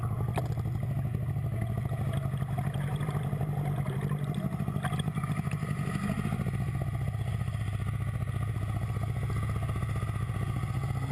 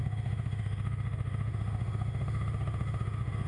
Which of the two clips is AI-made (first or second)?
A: second